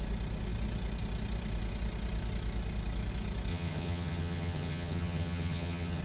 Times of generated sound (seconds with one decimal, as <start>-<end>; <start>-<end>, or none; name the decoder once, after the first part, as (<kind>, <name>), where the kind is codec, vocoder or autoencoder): 3.5-6.0 (vocoder, HiFi-GAN)

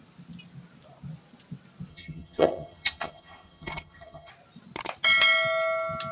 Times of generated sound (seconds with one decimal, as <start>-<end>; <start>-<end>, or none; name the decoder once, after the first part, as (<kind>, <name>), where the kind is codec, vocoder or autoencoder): 1.9-4.3 (vocoder, HiFi-GAN)

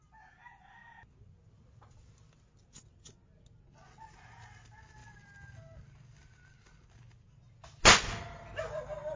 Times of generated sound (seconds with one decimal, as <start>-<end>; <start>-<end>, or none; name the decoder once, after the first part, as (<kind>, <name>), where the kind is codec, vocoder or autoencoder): none

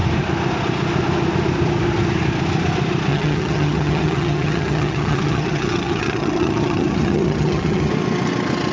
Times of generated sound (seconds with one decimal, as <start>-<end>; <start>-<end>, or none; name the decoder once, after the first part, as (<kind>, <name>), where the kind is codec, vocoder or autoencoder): 3.1-7.9 (vocoder, HiFi-GAN)

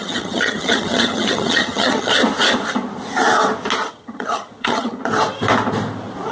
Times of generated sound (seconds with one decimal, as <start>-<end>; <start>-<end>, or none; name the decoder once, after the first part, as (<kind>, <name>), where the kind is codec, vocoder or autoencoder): 0.0-2.1 (vocoder, HiFi-GAN); 3.9-5.0